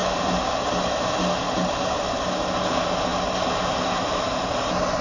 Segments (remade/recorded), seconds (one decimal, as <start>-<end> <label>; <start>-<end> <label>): 0.0-5.0 recorded